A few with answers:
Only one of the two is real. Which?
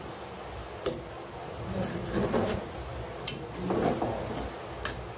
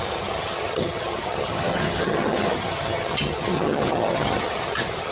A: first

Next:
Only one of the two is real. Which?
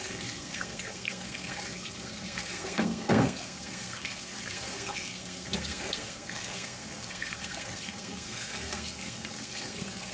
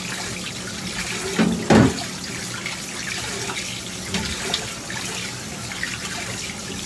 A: second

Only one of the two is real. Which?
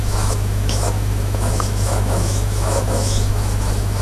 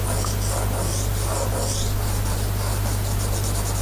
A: second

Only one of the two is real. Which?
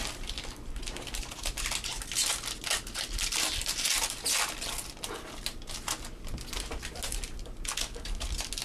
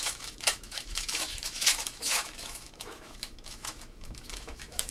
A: first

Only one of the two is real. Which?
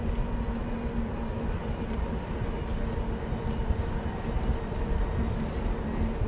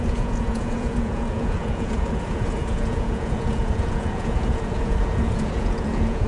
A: first